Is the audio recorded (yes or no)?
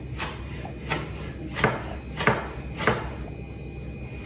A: yes